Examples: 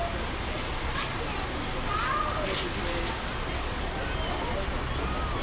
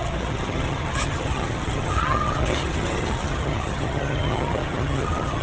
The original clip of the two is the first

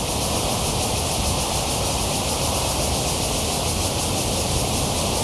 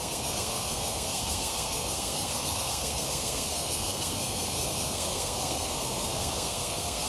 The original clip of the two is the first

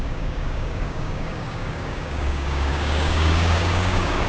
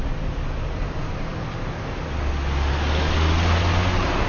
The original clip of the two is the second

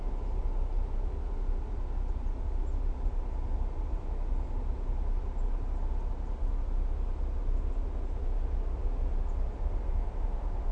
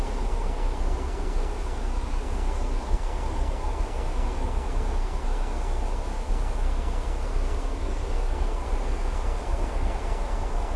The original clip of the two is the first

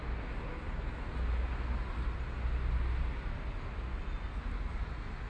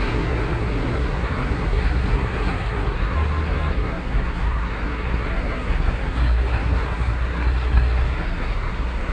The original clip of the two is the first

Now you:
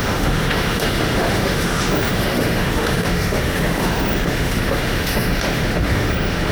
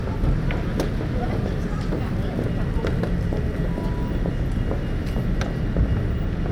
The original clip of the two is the second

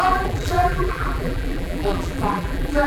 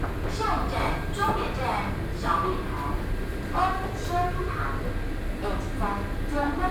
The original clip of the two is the second